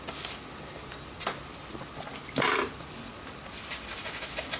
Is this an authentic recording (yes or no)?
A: yes